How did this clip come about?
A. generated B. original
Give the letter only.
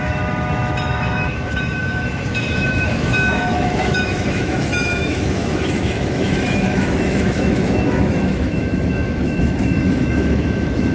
A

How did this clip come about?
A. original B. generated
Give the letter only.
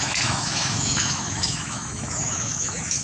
B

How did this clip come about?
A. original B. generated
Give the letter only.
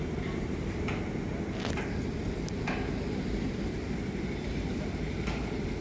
A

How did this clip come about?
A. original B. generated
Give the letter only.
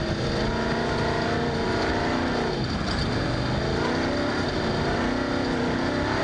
A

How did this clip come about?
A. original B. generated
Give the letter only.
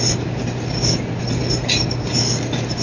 A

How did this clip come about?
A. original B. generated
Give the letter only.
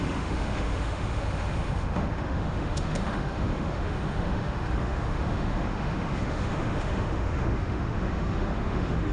B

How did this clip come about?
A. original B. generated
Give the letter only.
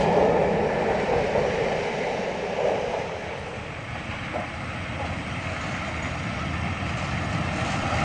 A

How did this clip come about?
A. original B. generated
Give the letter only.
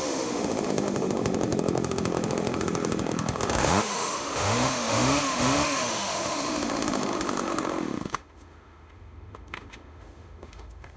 B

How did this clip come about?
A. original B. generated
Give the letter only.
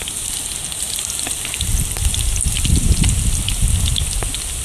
A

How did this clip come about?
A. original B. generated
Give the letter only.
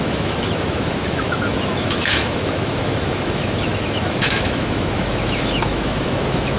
B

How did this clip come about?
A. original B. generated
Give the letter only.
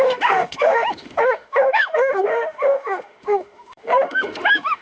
B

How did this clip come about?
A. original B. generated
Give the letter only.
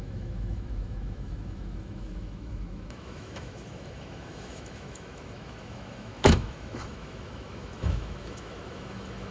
B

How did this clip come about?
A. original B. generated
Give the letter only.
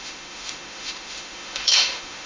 B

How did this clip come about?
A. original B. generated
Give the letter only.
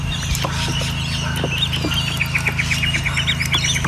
A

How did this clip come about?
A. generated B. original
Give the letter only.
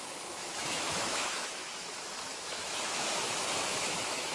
A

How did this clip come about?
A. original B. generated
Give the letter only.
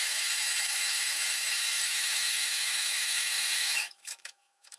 B